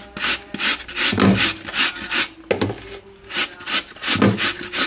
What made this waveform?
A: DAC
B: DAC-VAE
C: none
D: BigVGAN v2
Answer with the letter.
C